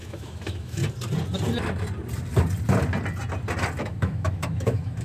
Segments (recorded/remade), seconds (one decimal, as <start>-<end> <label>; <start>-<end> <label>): 0.0-0.8 remade; 0.8-3.8 recorded; 3.8-5.0 remade